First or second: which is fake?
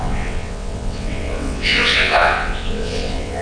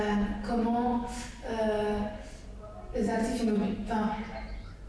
first